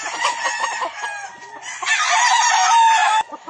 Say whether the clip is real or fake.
real